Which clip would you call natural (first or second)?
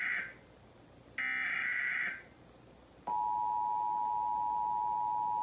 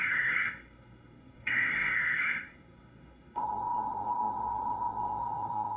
first